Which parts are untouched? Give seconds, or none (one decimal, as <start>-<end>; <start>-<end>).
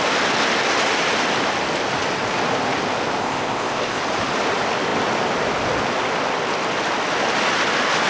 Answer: 0.0-3.2; 4.0-8.1